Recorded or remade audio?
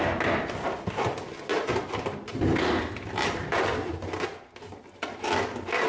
recorded